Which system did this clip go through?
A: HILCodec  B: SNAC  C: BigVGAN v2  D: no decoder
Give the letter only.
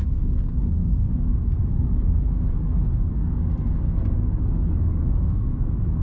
B